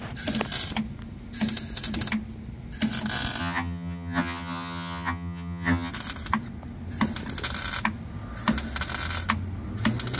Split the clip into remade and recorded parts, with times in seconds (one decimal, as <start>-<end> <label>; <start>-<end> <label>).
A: 0.0-3.4 recorded; 3.4-5.9 remade; 5.9-10.2 recorded